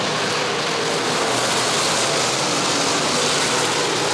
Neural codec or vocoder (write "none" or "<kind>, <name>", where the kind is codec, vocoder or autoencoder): none